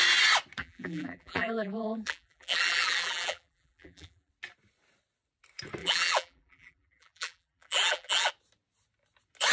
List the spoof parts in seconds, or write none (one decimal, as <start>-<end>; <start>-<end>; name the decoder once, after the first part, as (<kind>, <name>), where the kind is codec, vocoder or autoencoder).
0.6-4.3 (vocoder, BigVGAN v2); 5.8-8.3